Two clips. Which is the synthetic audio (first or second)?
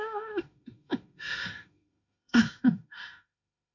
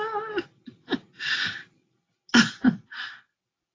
first